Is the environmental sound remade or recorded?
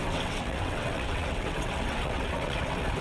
remade